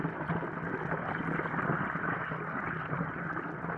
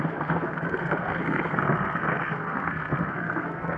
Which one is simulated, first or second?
second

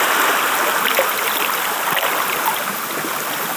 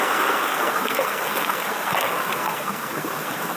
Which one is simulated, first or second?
second